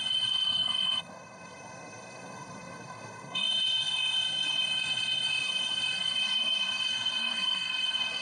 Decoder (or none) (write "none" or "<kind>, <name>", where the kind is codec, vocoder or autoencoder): codec, SNAC